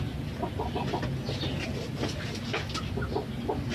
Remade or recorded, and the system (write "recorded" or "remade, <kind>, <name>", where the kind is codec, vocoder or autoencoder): recorded